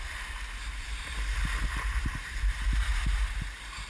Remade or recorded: remade